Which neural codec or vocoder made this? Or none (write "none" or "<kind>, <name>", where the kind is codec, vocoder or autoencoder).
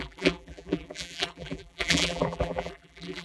vocoder, BigVGAN v2